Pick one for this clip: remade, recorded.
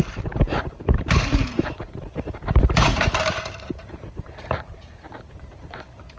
remade